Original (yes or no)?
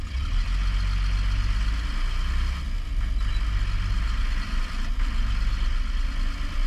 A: yes